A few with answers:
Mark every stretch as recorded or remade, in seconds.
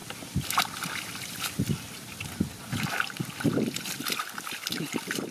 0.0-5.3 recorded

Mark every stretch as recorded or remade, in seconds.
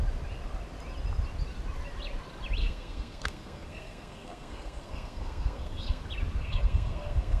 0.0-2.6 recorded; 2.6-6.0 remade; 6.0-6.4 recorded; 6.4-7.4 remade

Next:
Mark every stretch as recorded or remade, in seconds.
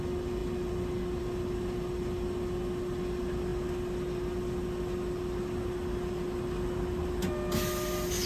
0.0-8.3 recorded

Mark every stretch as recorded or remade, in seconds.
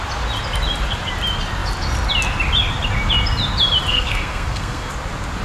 0.0-3.9 recorded; 3.9-4.9 remade; 4.9-5.4 recorded